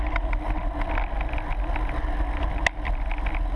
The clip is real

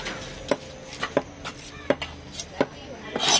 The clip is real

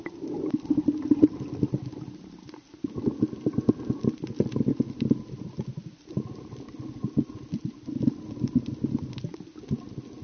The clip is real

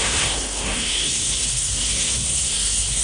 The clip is fake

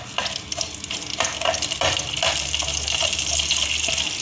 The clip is real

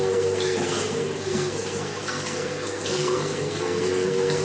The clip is fake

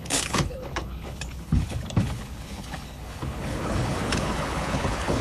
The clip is fake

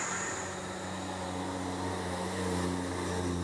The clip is real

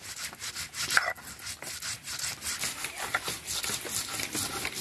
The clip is real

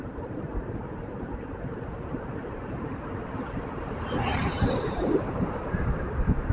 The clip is fake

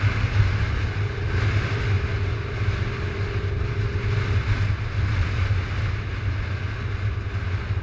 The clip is real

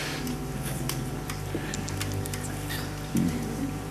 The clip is fake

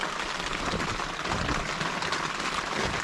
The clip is real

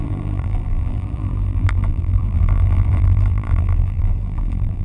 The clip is fake